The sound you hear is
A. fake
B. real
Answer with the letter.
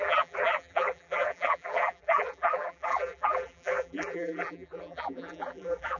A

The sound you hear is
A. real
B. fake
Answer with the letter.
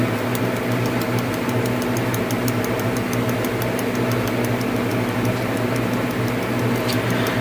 B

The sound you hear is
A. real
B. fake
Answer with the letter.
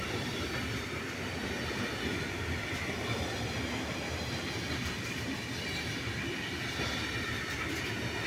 A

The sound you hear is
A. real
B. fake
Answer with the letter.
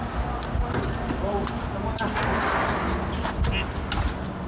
A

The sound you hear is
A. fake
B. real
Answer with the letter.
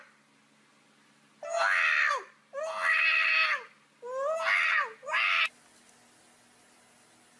B